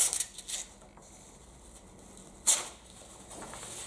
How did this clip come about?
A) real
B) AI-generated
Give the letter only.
A